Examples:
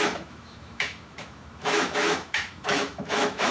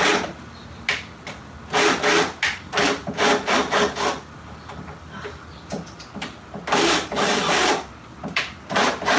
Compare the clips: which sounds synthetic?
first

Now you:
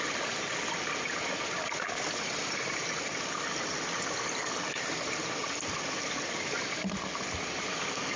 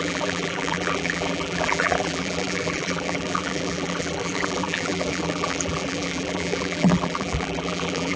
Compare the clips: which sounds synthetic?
second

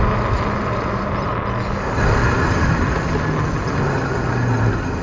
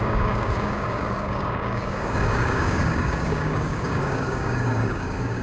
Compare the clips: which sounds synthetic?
second